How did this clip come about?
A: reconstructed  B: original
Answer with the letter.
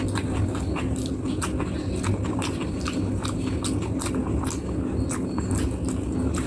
B